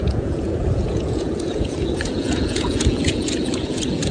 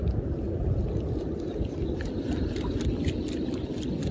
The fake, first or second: first